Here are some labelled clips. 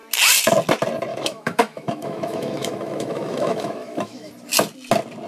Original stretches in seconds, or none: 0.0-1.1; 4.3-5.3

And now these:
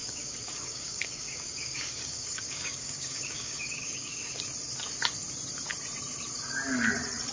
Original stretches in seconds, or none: 4.4-7.3

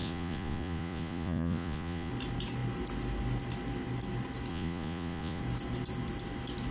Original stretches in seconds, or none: 2.1-4.5; 5.4-6.7

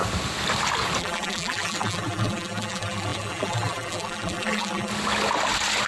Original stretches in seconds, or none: 0.0-1.0; 4.9-5.9

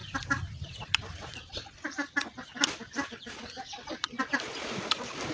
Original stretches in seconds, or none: 0.0-5.3

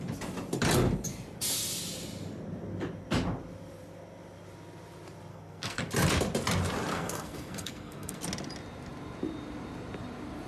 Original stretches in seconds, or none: 0.0-5.3; 5.8-6.9; 8.2-10.5

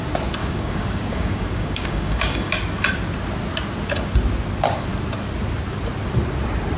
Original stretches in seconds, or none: 0.0-0.4; 2.5-6.8